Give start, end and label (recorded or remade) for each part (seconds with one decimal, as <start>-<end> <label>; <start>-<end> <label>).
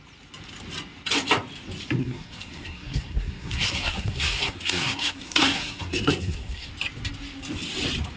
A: 0.0-2.0 recorded; 2.0-6.7 remade; 6.7-8.2 recorded